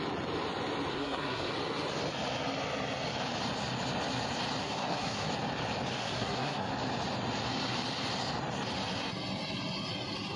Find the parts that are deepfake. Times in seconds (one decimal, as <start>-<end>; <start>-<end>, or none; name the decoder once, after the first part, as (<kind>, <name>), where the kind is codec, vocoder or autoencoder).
0.9-1.5 (codec, SNAC); 4.6-5.3; 6.0-6.7